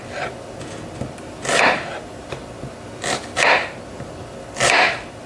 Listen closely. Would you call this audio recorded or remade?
recorded